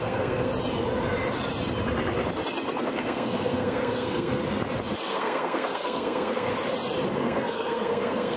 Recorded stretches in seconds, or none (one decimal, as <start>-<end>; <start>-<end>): 0.5-2.8; 4.4-5.1; 6.5-7.2